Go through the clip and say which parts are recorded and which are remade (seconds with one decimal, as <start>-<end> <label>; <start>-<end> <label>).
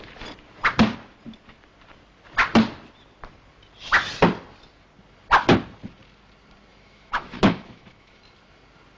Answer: 0.0-6.7 recorded; 6.7-8.2 remade; 8.2-9.0 recorded